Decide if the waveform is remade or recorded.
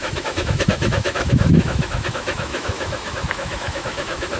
remade